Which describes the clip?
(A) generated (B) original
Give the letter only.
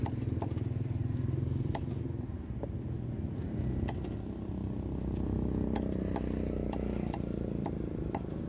B